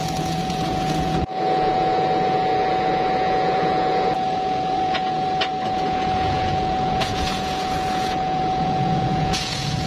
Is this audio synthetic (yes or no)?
yes